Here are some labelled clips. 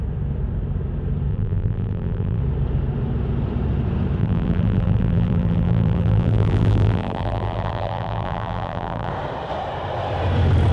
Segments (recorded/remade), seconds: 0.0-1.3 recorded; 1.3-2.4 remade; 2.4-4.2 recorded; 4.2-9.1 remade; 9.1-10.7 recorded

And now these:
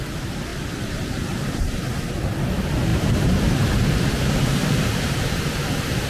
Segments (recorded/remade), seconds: 0.0-0.5 recorded; 0.5-1.7 remade; 1.7-2.9 recorded; 2.9-6.1 remade

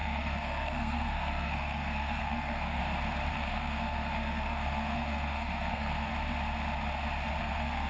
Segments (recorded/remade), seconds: 0.0-2.8 remade; 2.8-3.3 recorded; 3.3-6.1 remade; 6.1-7.4 recorded; 7.4-7.9 remade

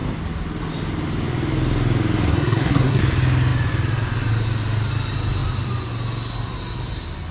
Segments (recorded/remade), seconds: 0.0-2.3 recorded; 2.3-3.0 remade; 3.0-7.3 recorded